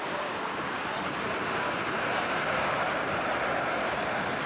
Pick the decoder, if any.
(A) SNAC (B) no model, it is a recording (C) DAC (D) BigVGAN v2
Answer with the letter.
D